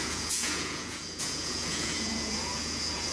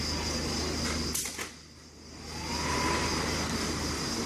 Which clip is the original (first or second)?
second